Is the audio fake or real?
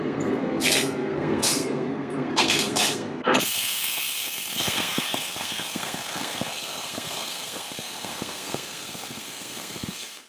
fake